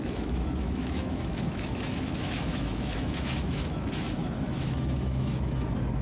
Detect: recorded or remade remade